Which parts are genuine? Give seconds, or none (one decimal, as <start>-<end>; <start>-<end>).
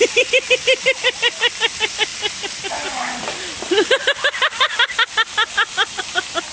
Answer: 0.0-6.5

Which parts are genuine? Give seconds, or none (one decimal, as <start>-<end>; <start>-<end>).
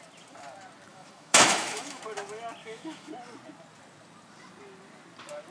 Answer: 0.0-0.9; 2.0-2.6; 3.1-5.5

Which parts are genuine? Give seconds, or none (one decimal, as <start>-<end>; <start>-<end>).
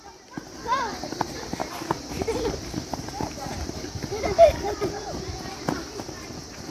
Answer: 0.0-6.7